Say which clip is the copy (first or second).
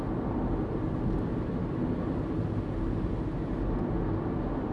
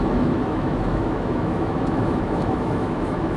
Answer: second